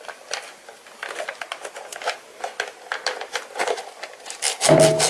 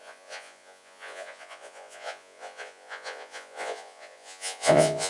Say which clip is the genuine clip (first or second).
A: first